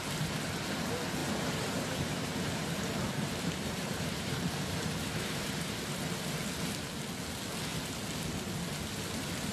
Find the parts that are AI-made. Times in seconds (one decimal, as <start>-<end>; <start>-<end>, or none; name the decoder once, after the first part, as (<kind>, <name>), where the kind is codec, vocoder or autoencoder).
1.2-5.7 (vocoder, BigVGAN v2)